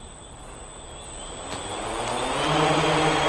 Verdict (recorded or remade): recorded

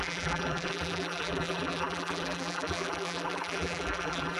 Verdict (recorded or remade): remade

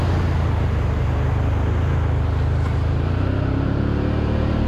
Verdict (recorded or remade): recorded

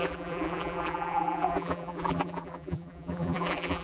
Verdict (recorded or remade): remade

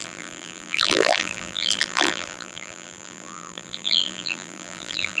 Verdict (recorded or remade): remade